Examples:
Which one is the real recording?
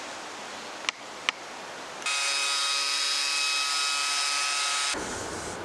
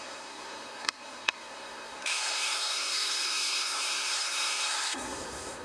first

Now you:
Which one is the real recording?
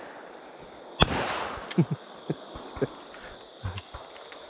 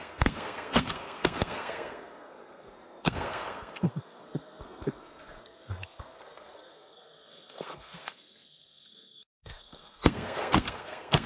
first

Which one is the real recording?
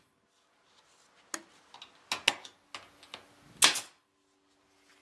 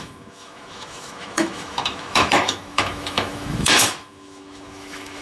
first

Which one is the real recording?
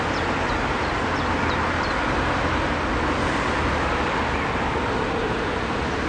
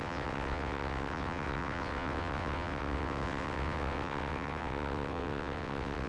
first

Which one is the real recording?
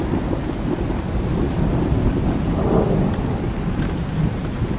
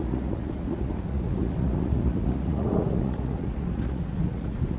first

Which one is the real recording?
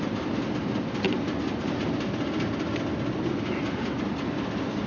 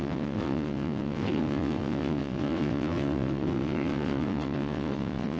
first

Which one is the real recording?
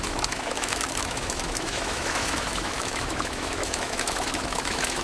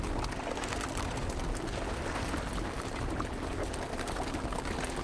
second